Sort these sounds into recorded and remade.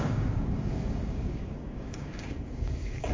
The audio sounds remade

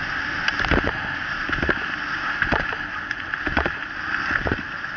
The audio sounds recorded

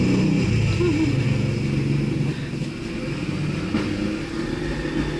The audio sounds recorded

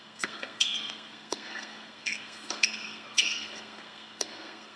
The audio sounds remade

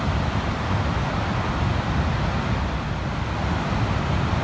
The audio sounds recorded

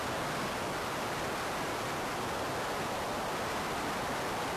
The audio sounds recorded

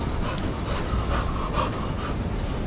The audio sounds recorded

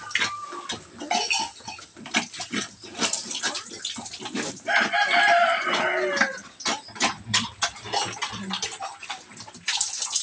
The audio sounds recorded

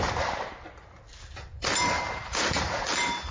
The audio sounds remade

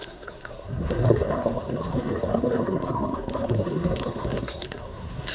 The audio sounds remade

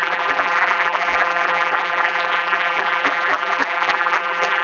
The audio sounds remade